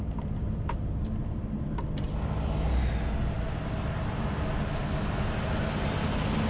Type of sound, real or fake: real